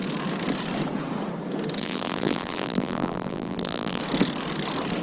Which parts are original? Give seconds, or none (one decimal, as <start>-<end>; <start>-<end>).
0.0-1.8; 4.0-5.0